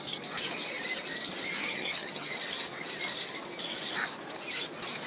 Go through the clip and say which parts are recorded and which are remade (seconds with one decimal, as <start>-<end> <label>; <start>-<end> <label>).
0.0-1.6 recorded; 1.6-2.3 remade; 2.3-5.1 recorded